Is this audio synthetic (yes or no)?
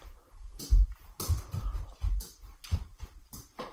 no